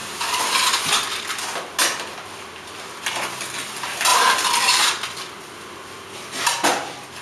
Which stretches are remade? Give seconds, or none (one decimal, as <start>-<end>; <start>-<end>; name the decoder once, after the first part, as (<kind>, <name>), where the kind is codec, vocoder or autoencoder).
4.1-4.8 (vocoder, BigVGAN v2)